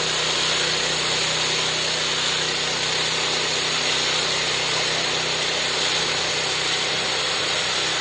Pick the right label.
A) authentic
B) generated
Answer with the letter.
A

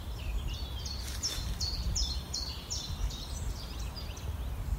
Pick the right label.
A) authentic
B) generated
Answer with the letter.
A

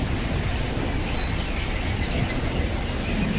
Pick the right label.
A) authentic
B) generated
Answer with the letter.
A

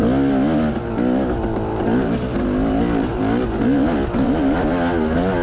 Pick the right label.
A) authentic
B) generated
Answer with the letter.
A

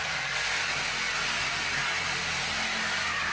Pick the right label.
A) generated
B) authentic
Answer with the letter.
B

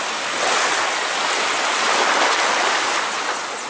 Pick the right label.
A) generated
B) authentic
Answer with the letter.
B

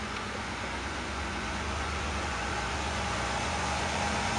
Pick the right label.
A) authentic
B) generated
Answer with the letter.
B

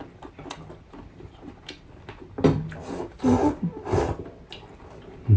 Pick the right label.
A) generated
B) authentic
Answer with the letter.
B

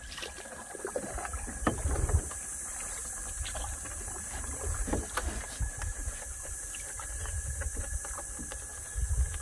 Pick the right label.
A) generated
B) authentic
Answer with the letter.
B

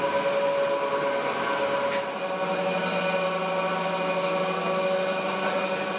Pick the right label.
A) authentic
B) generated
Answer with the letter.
A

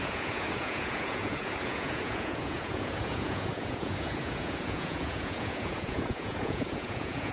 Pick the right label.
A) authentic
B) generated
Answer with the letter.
B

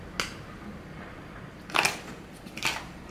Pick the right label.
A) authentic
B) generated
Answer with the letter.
A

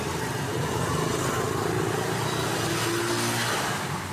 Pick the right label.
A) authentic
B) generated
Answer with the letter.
A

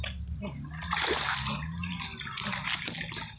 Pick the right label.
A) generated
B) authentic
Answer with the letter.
B